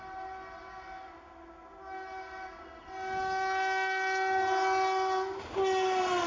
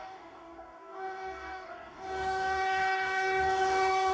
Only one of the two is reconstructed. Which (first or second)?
second